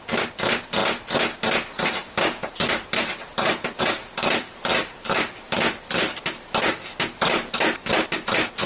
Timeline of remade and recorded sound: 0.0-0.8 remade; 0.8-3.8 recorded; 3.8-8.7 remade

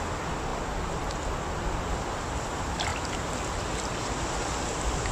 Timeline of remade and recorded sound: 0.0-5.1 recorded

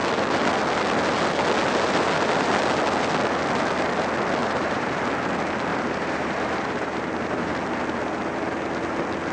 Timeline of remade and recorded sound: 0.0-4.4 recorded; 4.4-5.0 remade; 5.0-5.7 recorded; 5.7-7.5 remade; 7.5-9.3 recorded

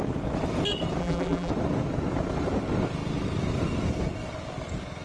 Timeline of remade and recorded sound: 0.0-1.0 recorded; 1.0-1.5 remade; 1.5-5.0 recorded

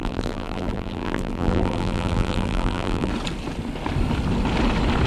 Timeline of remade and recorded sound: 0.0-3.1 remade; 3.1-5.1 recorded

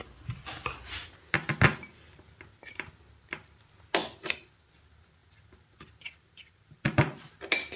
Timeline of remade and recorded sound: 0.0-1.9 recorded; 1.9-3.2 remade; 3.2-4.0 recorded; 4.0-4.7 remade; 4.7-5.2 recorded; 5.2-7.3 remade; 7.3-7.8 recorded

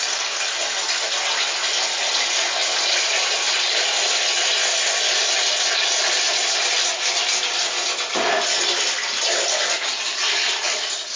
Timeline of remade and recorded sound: 0.0-11.2 recorded